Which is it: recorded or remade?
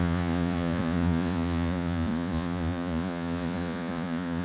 remade